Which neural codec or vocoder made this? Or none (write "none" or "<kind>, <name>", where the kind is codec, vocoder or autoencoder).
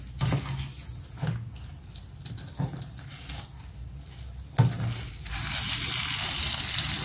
none